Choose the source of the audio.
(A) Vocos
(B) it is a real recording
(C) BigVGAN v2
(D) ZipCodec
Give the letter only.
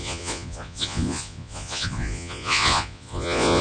A